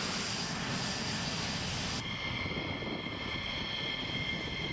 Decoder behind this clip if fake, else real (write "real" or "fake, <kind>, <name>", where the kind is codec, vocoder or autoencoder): real